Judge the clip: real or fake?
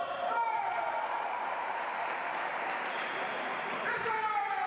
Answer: fake